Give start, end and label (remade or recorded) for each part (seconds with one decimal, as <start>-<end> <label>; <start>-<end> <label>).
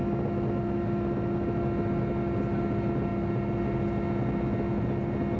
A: 0.0-5.4 recorded